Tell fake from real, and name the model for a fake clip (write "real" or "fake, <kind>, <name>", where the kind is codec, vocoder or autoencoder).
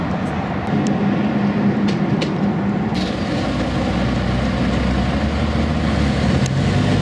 real